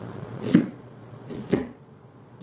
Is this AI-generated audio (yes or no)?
yes